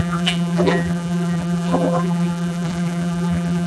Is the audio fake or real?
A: fake